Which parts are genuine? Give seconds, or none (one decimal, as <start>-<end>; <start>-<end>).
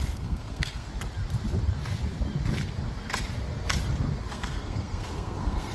0.9-4.3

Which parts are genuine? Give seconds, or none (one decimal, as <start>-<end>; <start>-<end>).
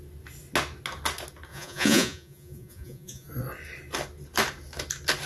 0.0-1.5; 3.3-5.3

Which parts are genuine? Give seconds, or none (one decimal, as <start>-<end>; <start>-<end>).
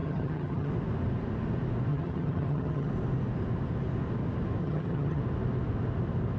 0.7-1.9; 2.9-4.6; 5.2-6.4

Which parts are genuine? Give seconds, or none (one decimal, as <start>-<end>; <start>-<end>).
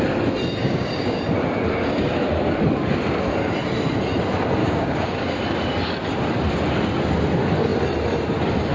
0.0-0.6; 1.2-4.6; 5.4-8.7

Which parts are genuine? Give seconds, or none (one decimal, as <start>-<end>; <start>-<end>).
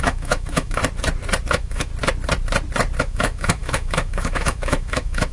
0.8-1.5; 1.9-3.0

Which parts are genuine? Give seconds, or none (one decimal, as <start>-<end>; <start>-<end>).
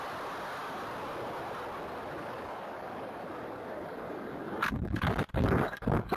0.0-2.2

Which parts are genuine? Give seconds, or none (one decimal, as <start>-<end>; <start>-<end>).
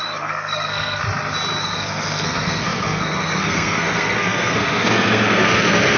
1.0-1.6